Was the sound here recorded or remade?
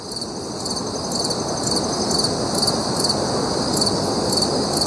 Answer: recorded